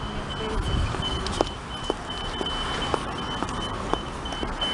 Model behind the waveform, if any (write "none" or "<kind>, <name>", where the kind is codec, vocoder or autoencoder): none